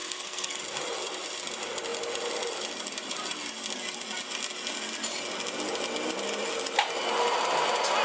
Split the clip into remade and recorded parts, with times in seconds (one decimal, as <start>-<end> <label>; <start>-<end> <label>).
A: 0.0-0.6 remade; 0.6-8.0 recorded